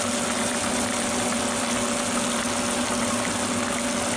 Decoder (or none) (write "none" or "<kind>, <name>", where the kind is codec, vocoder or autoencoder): none